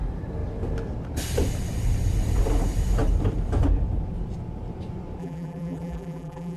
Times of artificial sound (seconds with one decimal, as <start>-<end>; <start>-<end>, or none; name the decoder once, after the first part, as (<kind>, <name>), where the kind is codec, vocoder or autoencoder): 5.2-6.6 (vocoder, BigVGAN v2)